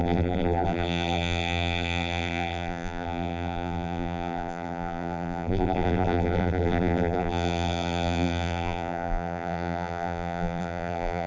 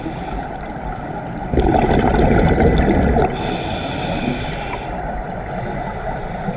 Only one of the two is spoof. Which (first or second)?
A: first